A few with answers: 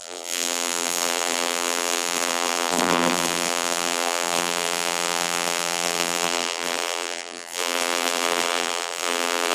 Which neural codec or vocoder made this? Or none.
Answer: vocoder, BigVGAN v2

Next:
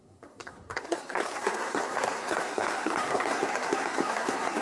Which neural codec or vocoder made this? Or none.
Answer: codec, SNAC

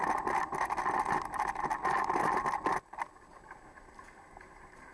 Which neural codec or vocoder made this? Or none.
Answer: none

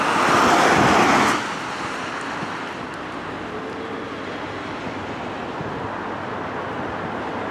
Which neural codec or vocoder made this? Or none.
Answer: none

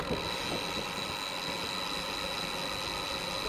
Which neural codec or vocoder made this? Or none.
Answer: none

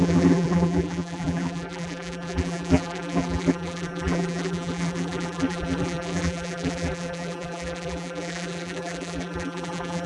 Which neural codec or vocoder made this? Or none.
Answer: vocoder, BigVGAN v2